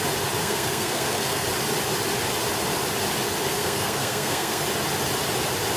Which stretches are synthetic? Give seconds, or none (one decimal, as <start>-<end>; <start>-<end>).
0.4-1.4; 3.5-4.6